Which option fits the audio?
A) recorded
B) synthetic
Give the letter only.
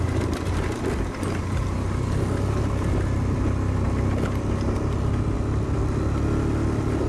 A